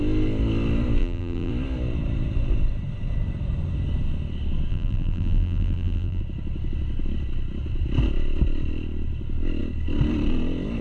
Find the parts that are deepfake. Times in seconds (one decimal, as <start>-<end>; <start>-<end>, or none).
1.0-1.5; 4.7-6.2